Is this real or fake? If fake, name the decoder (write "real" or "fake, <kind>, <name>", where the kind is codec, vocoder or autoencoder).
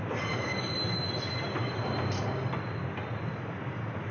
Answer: real